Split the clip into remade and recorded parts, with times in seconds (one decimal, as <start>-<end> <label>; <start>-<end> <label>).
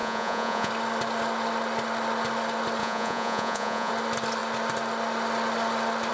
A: 0.0-0.7 remade; 0.7-2.8 recorded; 2.8-3.9 remade; 3.9-6.1 recorded